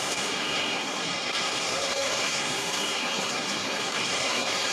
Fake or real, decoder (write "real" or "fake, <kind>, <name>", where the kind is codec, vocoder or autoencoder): fake, codec, SNAC